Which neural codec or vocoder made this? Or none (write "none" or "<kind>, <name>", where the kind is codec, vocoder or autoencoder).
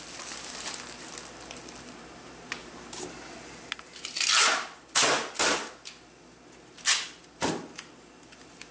none